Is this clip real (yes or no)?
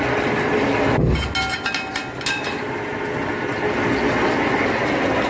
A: yes